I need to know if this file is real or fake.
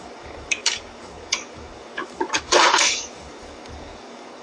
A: fake